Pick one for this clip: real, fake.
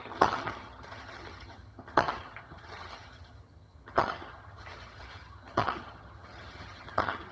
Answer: fake